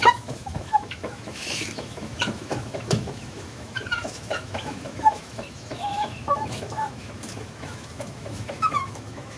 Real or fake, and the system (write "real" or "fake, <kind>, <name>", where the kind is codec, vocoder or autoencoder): fake, autoencoder, DAC-VAE